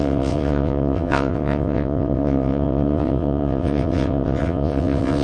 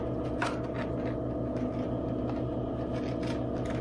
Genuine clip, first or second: second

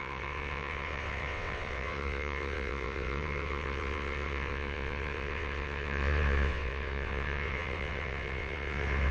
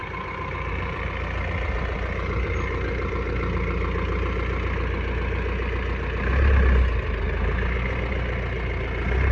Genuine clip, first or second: second